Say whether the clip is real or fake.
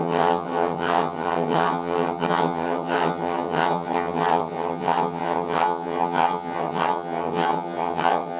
fake